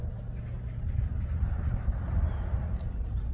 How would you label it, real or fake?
real